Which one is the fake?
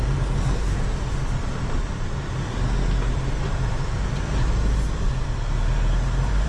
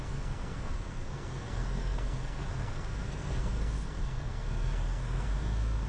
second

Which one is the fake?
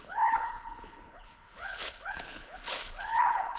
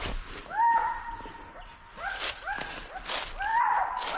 first